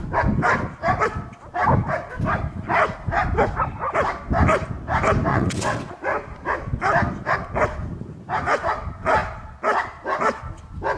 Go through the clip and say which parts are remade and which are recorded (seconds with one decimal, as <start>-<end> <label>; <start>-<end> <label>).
0.0-5.3 recorded; 5.3-5.9 remade; 5.9-11.0 recorded

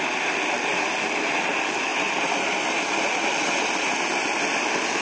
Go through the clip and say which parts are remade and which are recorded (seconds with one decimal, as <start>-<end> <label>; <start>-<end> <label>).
0.0-5.0 recorded

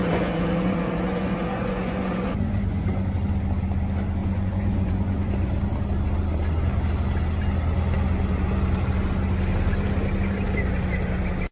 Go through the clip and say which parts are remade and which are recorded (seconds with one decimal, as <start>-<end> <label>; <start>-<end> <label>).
0.0-3.1 remade; 3.1-4.2 recorded; 4.2-5.3 remade; 5.3-11.5 recorded

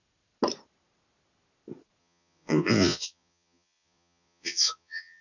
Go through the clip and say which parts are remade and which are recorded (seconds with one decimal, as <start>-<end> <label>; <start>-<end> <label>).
0.0-2.0 recorded; 2.0-5.2 remade

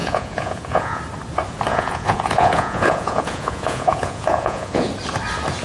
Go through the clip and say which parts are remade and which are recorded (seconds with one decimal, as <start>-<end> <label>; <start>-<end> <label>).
0.0-1.0 remade; 1.0-1.7 recorded; 1.7-4.9 remade; 4.9-5.6 recorded

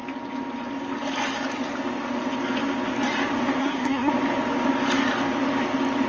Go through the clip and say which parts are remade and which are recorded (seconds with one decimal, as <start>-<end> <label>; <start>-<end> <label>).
0.0-3.6 recorded; 3.6-4.1 remade; 4.1-6.1 recorded

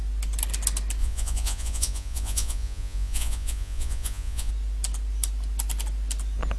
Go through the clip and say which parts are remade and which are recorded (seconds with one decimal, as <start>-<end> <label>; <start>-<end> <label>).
0.0-1.0 recorded; 1.0-4.5 remade; 4.5-6.6 recorded

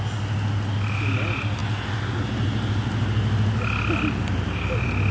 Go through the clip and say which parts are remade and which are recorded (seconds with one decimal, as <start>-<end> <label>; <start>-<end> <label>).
0.0-5.1 recorded